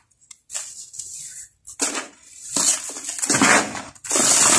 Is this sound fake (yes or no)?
no